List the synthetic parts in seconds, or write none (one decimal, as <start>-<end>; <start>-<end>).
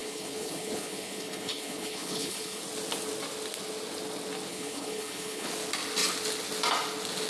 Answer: 0.0-2.6; 4.5-5.5